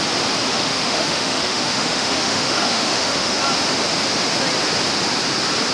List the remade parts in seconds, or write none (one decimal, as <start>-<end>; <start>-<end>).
0.5-3.4